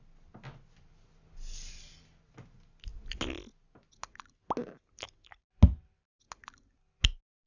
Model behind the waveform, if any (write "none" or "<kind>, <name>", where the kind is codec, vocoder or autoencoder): none